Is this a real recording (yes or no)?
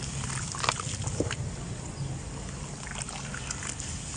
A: yes